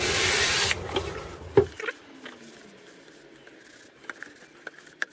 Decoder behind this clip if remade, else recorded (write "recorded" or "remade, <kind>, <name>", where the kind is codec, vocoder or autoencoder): recorded